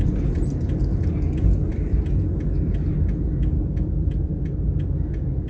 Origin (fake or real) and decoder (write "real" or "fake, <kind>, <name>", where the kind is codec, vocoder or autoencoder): real